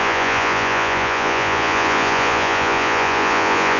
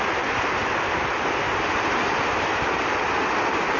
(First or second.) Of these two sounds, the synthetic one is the first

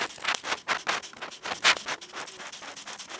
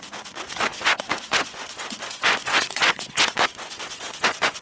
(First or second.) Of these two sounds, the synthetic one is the second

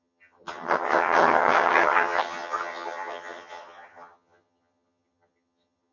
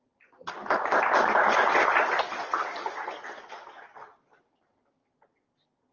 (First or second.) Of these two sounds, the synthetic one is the first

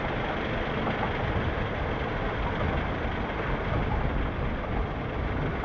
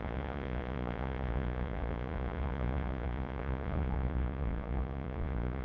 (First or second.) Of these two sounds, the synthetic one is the second